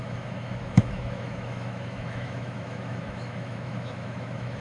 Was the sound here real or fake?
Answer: fake